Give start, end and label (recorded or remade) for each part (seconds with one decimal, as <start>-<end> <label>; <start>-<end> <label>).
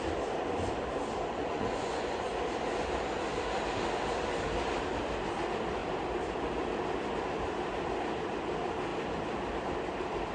0.0-1.3 recorded; 1.3-2.3 remade; 2.3-10.3 recorded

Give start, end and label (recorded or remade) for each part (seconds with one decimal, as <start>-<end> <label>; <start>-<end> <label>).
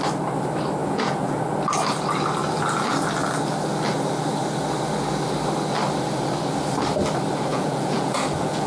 0.0-0.8 recorded; 0.8-1.4 remade; 1.4-7.5 recorded; 7.5-8.7 remade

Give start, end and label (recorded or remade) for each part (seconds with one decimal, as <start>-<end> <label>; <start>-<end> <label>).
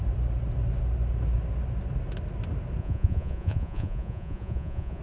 0.0-2.8 recorded; 2.8-5.0 remade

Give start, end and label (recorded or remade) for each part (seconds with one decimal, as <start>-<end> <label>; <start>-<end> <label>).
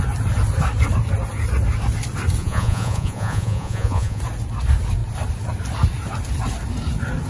0.0-2.4 recorded; 2.4-4.2 remade; 4.2-7.3 recorded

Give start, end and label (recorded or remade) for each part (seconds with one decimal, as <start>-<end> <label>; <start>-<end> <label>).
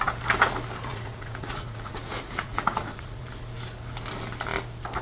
0.0-0.9 recorded; 0.9-3.3 remade; 3.3-5.0 recorded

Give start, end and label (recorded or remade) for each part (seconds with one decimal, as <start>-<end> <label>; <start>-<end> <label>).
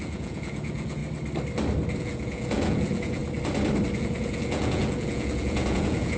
0.0-1.0 remade; 1.0-2.0 recorded; 2.0-3.2 remade; 3.2-4.0 recorded; 4.0-6.2 remade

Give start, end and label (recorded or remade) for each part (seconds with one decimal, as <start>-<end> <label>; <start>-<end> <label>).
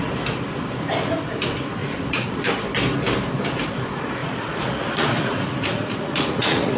0.0-1.8 recorded; 1.8-2.4 remade; 2.4-4.2 recorded; 4.2-6.8 remade